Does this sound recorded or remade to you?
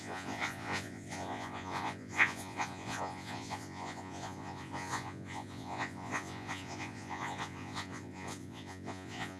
remade